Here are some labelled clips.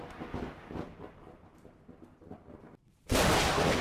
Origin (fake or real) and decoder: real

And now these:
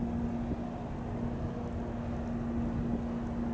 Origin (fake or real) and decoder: real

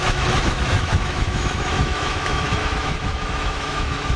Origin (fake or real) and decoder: fake, autoencoder, DAC-VAE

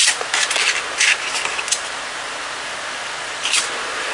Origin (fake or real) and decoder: real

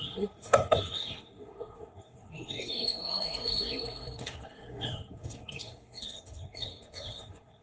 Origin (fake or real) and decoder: fake, codec, SNAC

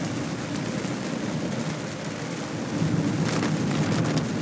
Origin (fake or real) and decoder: real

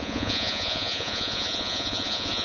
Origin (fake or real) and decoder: fake, vocoder, Vocos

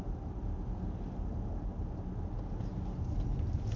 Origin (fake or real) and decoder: real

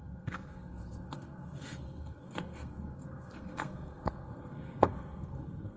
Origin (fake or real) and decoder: fake, codec, SNAC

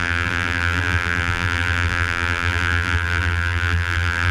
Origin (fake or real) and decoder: fake, vocoder, BigVGAN v2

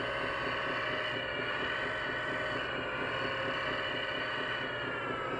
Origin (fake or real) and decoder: real